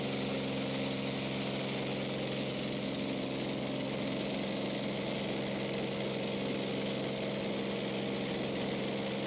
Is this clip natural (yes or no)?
yes